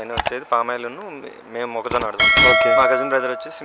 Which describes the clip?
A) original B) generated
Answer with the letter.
A